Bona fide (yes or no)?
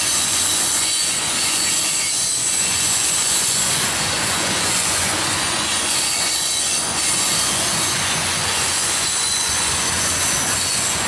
no